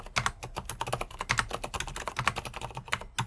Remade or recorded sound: recorded